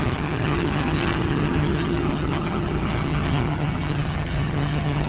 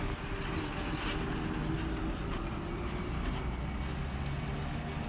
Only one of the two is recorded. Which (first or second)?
second